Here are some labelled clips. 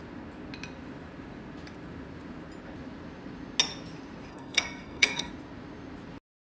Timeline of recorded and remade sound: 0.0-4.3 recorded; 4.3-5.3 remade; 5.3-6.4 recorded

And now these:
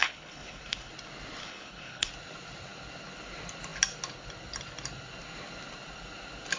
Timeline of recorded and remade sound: 0.0-0.9 remade; 0.9-1.4 recorded; 1.4-2.1 remade; 2.1-6.6 recorded

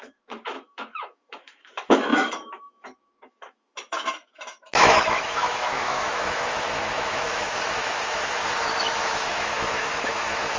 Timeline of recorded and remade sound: 0.0-10.6 remade

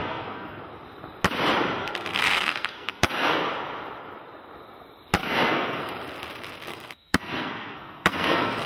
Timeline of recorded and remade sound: 0.0-0.6 remade; 0.6-1.8 recorded; 1.8-3.5 remade; 3.5-5.2 recorded; 5.2-5.9 remade; 5.9-6.7 recorded; 6.7-8.7 remade

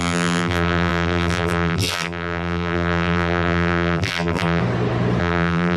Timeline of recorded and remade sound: 0.0-4.6 remade; 4.6-5.2 recorded; 5.2-5.8 remade

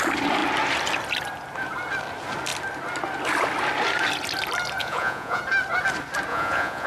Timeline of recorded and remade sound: 0.0-4.8 recorded; 4.8-5.4 remade; 5.4-6.3 recorded; 6.3-6.9 remade

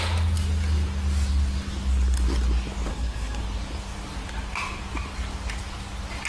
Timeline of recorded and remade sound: 0.0-2.9 recorded; 2.9-3.4 remade; 3.4-6.3 recorded